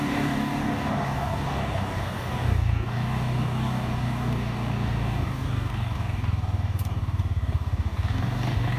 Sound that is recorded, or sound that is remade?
remade